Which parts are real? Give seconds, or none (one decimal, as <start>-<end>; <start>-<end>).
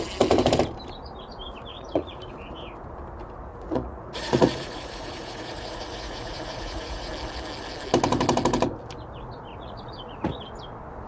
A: 0.0-1.7; 2.3-3.5; 7.1-9.5; 10.4-11.1